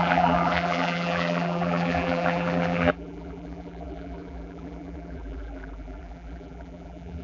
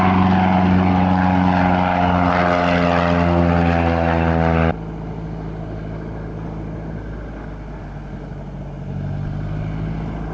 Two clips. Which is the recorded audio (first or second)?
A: second